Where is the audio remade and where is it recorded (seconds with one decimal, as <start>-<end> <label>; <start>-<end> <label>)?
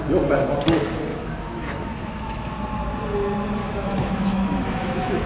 0.0-1.1 recorded; 1.1-2.5 remade; 2.5-3.6 recorded; 3.6-5.3 remade